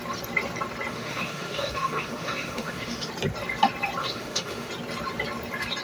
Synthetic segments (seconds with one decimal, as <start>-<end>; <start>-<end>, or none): 0.9-3.1; 4.0-4.7